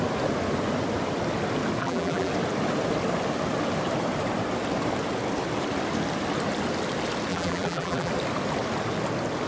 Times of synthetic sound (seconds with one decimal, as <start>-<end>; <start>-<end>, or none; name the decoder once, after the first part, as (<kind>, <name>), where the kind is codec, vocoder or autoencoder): 1.8-2.3 (vocoder, BigVGAN v2); 7.3-8.1